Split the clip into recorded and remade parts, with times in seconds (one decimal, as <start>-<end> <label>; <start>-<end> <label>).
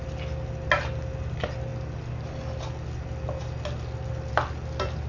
0.0-5.1 recorded